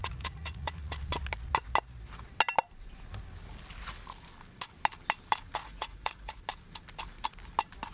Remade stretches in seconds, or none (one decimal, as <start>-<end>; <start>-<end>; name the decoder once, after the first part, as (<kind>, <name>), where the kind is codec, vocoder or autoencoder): 0.0-1.0 (vocoder, Vocos); 5.6-6.4